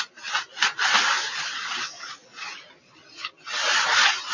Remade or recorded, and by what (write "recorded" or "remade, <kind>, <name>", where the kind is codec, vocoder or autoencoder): recorded